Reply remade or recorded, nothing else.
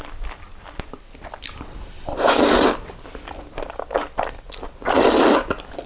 recorded